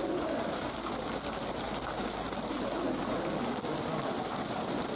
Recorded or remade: recorded